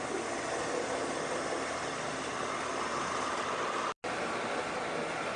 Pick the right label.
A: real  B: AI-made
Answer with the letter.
A